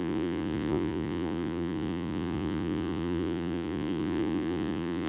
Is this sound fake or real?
fake